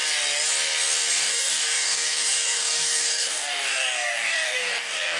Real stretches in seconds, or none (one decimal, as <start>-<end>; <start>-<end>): 0.0-1.1